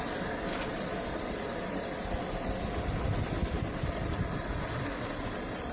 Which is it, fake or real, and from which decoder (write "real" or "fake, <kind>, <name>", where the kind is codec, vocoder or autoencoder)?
real